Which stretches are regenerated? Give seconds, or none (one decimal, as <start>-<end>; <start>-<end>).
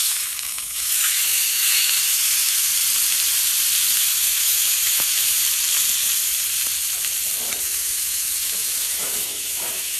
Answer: 0.0-2.7; 4.0-5.4; 7.6-10.0